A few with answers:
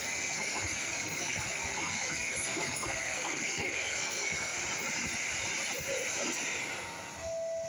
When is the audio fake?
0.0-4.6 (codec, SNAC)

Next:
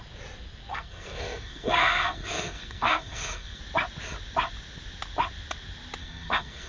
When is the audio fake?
0.7-3.6 (codec, SNAC); 6.0-6.7

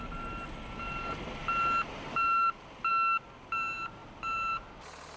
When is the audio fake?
none